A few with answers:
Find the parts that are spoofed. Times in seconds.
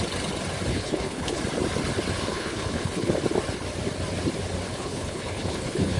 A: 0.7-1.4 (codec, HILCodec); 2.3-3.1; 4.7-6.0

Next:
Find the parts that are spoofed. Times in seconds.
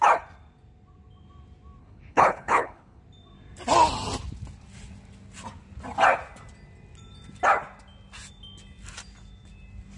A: 1.8-3.0 (codec, HILCodec)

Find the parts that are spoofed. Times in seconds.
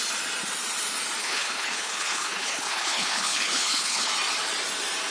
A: 1.2-4.1 (codec, HILCodec)